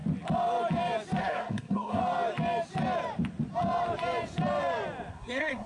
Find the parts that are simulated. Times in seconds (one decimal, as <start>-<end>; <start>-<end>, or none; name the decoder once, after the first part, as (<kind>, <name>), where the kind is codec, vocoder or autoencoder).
1.2-2.0 (codec, SNAC); 5.1-5.7

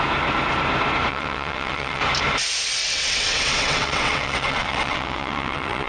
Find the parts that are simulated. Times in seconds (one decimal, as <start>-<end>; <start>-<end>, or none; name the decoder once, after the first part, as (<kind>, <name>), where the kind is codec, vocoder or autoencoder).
1.1-2.0 (vocoder, WaveNeXt); 2.8-5.9

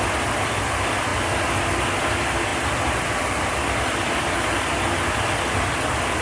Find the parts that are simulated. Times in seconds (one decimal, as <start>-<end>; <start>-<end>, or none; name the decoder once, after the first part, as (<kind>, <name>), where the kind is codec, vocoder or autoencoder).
none